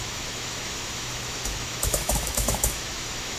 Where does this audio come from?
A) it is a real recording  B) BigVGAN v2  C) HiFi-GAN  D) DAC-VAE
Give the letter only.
D